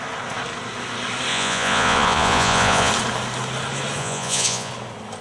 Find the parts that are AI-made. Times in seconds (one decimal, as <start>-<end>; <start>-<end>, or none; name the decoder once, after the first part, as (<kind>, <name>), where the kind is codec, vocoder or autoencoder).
1.3-2.9 (vocoder, Vocos); 4.0-4.7